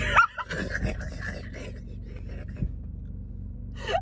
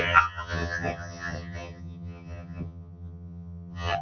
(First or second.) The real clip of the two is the first